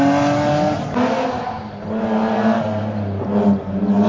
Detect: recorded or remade recorded